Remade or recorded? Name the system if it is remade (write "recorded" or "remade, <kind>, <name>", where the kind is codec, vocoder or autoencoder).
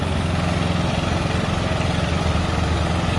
recorded